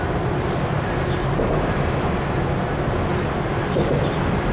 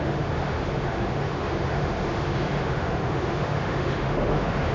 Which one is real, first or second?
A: first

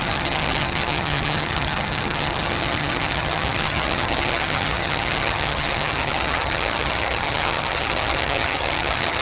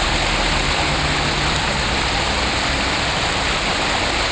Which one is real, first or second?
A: second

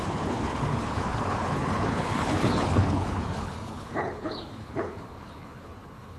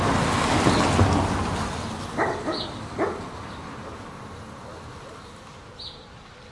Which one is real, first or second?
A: second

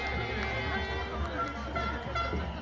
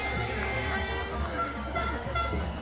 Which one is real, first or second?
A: first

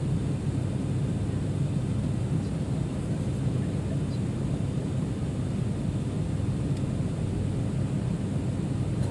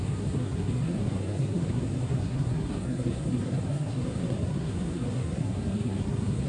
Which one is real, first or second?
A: first